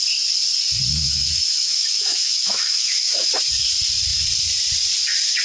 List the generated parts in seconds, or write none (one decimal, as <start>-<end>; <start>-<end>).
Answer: 0.9-3.3